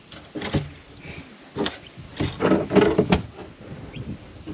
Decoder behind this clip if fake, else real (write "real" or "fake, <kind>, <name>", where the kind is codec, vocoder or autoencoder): real